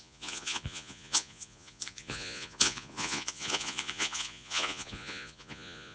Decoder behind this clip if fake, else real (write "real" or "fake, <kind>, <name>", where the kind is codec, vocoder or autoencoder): fake, vocoder, Vocos